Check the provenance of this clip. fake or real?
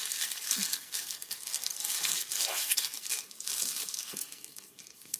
fake